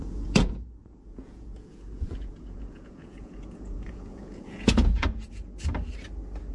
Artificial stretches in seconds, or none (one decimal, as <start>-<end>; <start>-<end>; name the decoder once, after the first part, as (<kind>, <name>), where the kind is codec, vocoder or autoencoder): 0.0-5.4 (vocoder, Vocos)